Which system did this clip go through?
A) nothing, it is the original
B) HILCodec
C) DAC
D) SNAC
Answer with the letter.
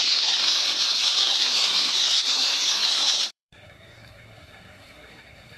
D